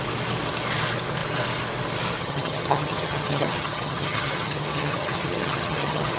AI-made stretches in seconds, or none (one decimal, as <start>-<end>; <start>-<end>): 2.2-6.2